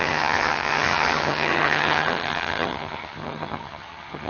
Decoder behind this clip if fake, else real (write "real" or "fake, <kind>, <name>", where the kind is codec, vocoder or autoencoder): fake, vocoder, HiFi-GAN